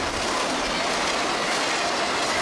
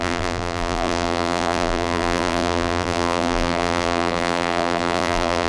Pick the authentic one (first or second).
first